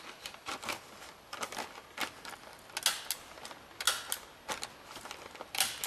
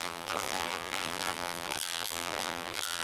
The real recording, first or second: first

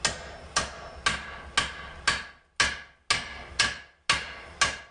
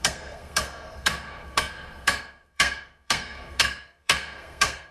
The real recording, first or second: first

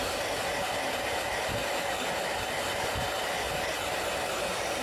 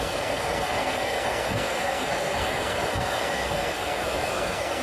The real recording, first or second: first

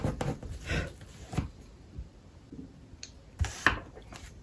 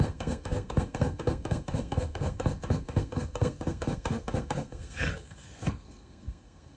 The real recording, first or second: first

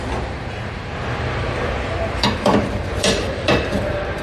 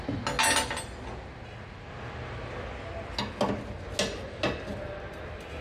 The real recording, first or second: second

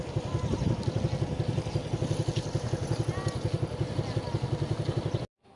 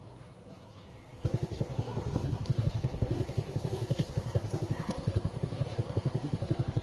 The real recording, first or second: first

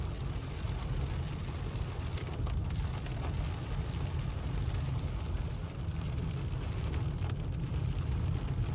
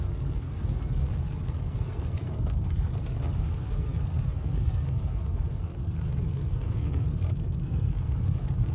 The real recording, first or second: first